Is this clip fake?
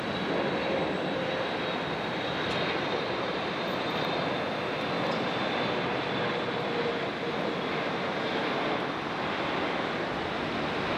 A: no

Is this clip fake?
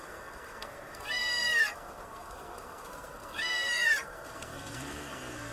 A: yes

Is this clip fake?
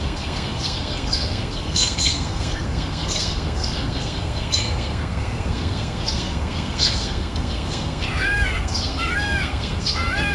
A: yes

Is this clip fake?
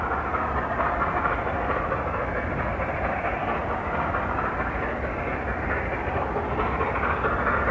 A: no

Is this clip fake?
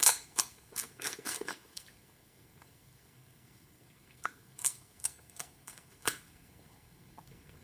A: yes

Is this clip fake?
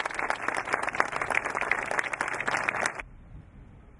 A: no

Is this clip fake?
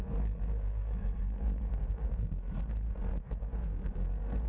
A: yes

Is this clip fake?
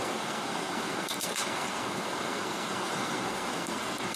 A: yes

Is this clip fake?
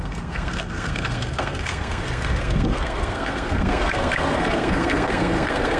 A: yes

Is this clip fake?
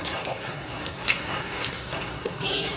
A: yes